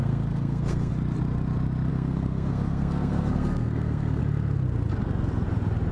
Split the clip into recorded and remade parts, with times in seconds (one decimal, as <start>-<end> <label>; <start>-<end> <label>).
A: 0.0-0.9 remade; 0.9-1.9 recorded; 1.9-4.2 remade; 4.2-5.9 recorded